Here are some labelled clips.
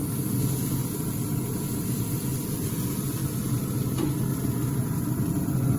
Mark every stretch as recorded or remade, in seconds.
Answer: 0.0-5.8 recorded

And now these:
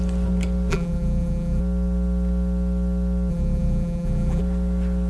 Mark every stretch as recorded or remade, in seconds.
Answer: 0.0-0.7 recorded; 0.7-1.6 remade; 1.6-3.3 recorded; 3.3-4.4 remade; 4.4-5.1 recorded

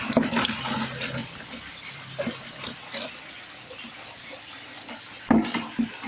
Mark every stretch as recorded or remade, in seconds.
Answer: 0.0-1.2 recorded; 1.2-2.3 remade; 2.3-6.1 recorded

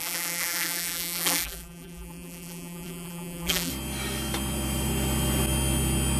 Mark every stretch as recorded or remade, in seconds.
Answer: 0.0-3.7 remade; 3.7-6.2 recorded